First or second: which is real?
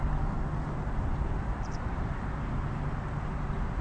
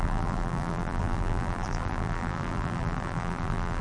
first